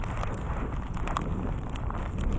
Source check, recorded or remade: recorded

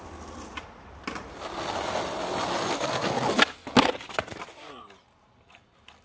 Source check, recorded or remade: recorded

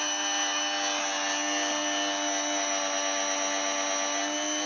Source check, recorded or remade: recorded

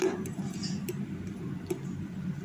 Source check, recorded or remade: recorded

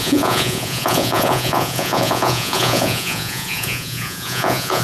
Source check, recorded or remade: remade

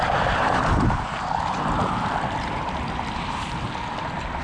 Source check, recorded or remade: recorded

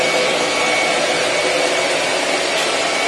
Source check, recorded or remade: recorded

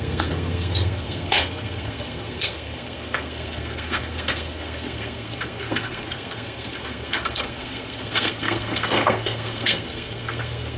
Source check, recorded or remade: remade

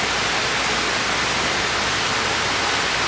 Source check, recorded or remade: recorded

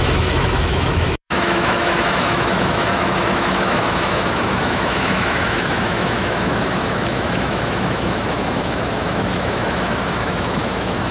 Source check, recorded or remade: remade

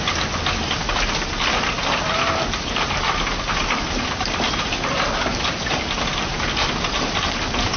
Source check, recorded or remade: recorded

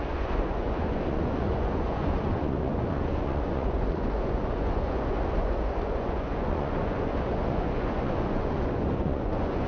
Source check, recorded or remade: remade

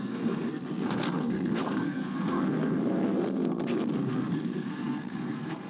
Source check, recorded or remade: remade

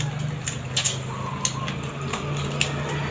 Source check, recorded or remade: recorded